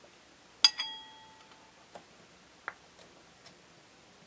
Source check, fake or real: real